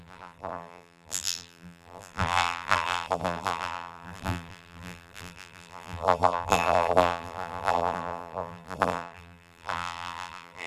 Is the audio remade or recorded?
remade